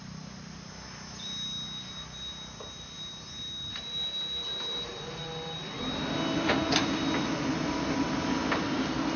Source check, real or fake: real